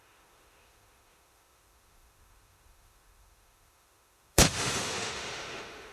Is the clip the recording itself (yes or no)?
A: no